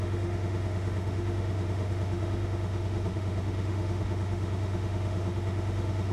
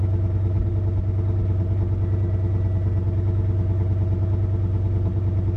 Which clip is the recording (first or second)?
second